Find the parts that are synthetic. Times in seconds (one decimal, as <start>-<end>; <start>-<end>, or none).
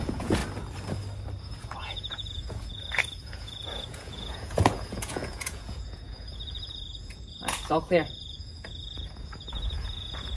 0.0-0.4; 1.4-10.4